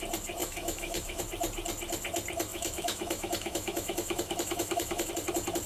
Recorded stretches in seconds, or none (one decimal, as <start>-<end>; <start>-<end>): 0.0-0.4; 1.2-2.5; 5.1-5.7